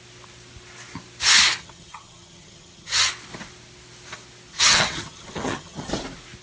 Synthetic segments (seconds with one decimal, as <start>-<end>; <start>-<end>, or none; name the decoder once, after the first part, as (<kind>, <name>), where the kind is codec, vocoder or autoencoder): 1.6-3.1 (vocoder, HiFi-GAN); 4.5-5.9